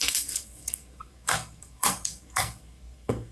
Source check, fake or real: fake